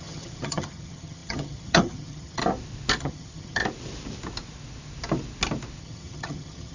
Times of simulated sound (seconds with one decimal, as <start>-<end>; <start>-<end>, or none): 0.0-2.4; 3.0-3.6; 5.8-6.7